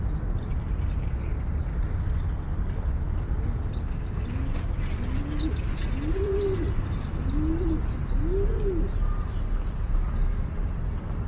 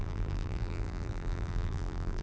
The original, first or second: first